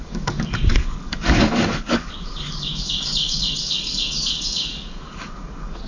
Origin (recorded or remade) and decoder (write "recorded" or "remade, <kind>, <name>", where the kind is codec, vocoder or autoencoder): remade, codec, DAC